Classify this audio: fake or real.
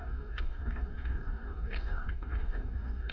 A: fake